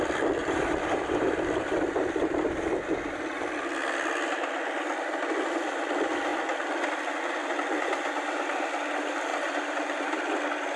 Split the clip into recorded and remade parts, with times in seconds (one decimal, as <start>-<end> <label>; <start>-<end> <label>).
0.0-0.4 recorded; 0.4-1.3 remade; 1.3-9.3 recorded; 9.3-10.2 remade; 10.2-10.8 recorded